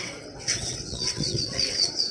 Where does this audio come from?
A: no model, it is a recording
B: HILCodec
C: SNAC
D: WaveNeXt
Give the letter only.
D